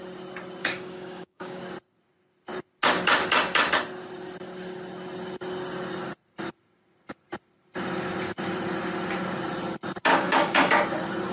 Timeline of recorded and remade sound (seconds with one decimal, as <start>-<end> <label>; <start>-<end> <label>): 0.0-0.6 recorded; 0.6-1.6 remade; 1.6-10.1 recorded; 10.1-10.7 remade; 10.7-11.3 recorded